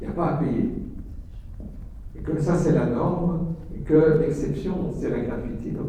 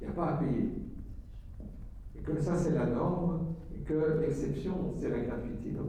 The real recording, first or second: second